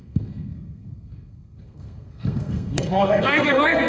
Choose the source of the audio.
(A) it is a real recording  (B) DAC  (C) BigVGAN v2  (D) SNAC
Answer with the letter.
D